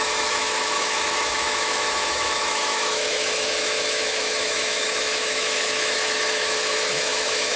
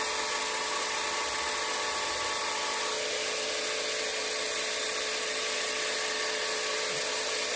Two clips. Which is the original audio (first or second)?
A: second